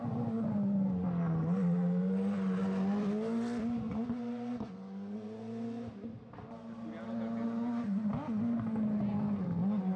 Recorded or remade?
recorded